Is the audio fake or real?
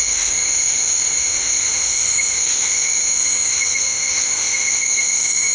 fake